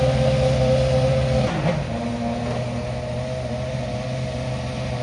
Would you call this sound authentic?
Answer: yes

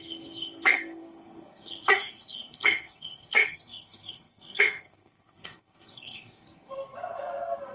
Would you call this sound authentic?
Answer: no